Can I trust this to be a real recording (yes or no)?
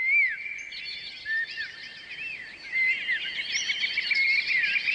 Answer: yes